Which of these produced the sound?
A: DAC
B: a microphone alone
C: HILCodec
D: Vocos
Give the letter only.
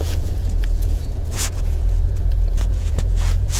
D